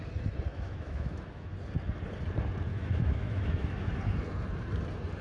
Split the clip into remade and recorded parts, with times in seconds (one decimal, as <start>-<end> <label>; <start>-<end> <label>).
0.0-0.5 recorded; 0.5-1.5 remade; 1.5-2.7 recorded; 2.7-3.9 remade; 3.9-5.2 recorded

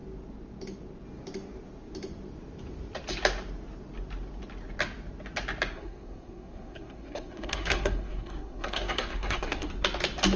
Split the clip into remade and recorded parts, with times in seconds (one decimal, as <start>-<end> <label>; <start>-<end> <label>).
0.0-5.7 recorded; 5.7-9.7 remade; 9.7-10.4 recorded

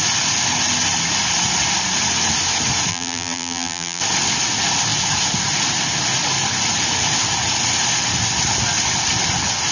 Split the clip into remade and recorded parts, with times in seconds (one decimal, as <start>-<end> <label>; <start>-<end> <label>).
0.0-2.9 recorded; 2.9-4.0 remade; 4.0-9.7 recorded

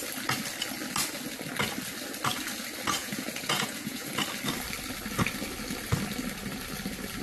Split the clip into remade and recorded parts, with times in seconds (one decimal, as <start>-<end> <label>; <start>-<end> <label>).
0.0-3.0 recorded; 3.0-4.1 remade; 4.1-7.2 recorded

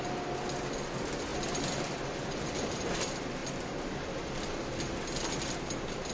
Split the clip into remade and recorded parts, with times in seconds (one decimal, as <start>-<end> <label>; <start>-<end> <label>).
0.0-1.3 recorded; 1.3-2.7 remade; 2.7-6.1 recorded

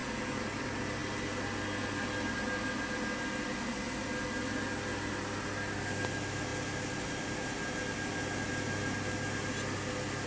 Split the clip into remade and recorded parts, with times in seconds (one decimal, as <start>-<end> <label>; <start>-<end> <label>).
0.0-10.3 recorded

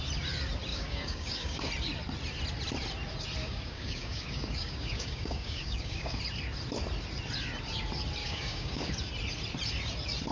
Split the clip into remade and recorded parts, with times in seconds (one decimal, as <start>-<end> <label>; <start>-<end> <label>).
0.0-0.7 recorded; 0.7-1.7 remade; 1.7-3.4 recorded; 3.4-6.2 remade; 6.2-8.2 recorded; 8.2-8.9 remade; 8.9-10.3 recorded

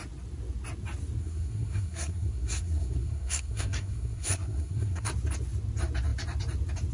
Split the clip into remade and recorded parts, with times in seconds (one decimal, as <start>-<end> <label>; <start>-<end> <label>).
0.0-1.2 recorded; 1.2-5.1 remade; 5.1-6.9 recorded